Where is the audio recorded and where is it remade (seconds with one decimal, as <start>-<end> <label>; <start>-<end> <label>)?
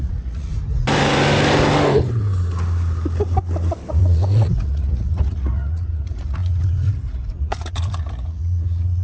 0.0-0.5 remade; 0.5-4.0 recorded; 4.0-9.0 remade